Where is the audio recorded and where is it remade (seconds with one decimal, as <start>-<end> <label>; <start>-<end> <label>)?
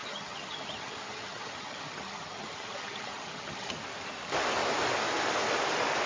0.0-3.7 remade; 3.7-6.1 recorded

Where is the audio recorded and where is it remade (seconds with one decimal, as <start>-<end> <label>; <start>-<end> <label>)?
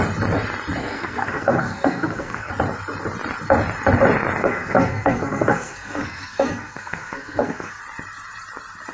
0.0-0.8 recorded; 0.8-2.5 remade; 2.5-4.4 recorded; 4.4-7.8 remade; 7.8-8.9 recorded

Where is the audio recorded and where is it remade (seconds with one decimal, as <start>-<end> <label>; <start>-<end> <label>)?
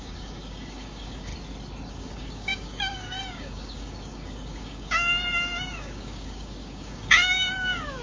0.0-1.3 remade; 1.3-1.9 recorded; 1.9-8.0 remade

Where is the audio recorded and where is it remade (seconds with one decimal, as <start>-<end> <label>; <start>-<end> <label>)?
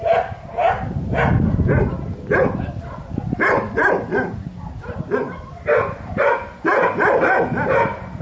0.0-8.2 recorded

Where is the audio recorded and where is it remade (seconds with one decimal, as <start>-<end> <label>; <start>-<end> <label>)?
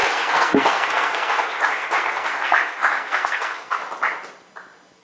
0.0-3.8 remade; 3.8-5.0 recorded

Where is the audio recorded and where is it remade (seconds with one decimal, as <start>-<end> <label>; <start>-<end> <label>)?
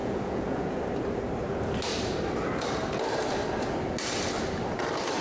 0.0-0.8 remade; 0.8-5.2 recorded